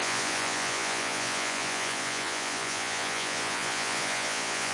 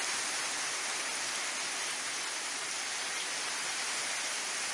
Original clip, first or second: second